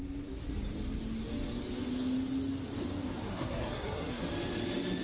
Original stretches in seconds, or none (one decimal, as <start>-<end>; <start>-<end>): 0.0-3.3; 4.2-5.0